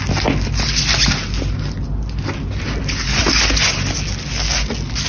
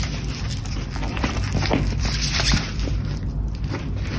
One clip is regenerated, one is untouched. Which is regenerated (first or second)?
second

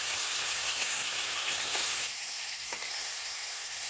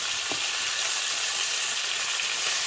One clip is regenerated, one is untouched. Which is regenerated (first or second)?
first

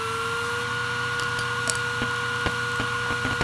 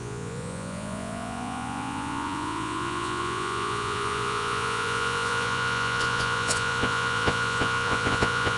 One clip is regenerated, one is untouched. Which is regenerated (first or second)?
second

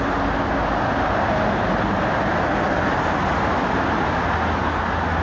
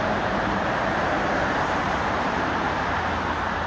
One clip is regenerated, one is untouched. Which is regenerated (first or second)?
second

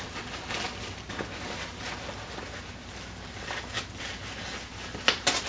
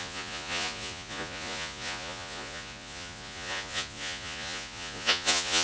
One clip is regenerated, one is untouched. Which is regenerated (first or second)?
second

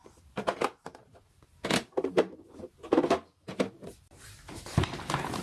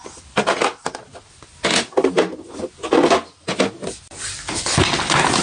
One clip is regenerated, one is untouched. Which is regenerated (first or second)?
first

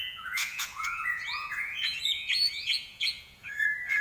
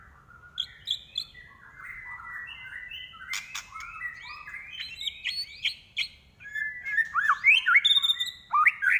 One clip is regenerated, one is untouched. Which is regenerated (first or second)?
first